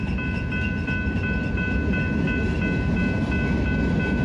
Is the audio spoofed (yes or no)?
no